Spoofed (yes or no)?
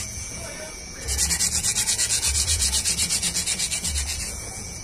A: yes